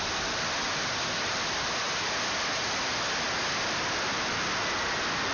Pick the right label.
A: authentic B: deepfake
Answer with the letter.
A